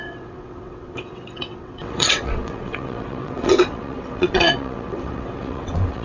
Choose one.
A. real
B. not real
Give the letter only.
B